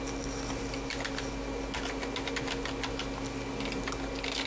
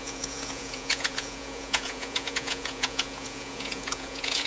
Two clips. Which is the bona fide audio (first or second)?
first